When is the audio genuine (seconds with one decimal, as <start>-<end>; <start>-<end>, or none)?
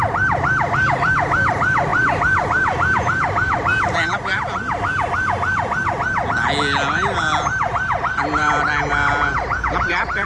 3.7-7.4